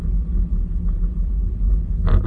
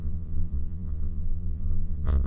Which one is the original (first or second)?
first